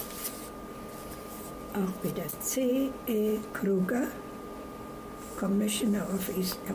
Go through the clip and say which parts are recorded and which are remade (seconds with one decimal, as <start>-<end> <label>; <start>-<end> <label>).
0.0-6.7 recorded